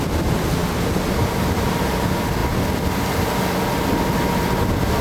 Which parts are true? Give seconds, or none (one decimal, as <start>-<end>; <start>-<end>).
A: 0.0-0.6; 2.0-5.0

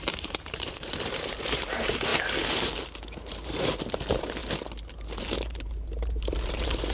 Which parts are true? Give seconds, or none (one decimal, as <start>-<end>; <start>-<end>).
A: 2.1-3.0; 4.4-5.2

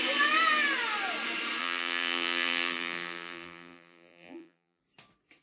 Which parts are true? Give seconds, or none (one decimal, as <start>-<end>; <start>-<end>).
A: 0.0-1.6; 4.8-5.4

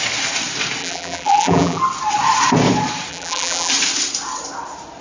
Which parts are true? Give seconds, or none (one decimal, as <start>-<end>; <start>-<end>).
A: 0.0-0.8; 1.8-3.1; 3.7-5.0

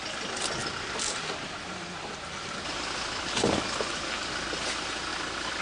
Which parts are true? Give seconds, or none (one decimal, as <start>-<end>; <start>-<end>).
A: 0.0-5.1